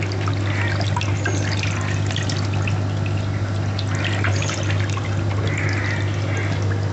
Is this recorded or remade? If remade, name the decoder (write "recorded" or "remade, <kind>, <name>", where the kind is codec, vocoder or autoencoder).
recorded